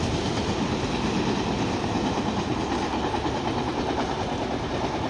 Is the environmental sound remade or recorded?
recorded